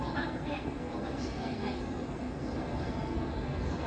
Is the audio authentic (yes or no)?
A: no